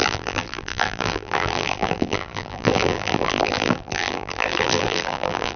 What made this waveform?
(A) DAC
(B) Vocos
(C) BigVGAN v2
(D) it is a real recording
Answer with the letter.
C